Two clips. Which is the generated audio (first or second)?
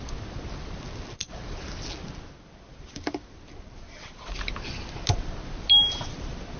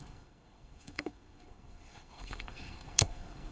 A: second